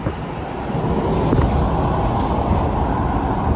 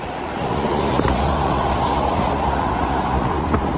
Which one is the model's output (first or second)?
second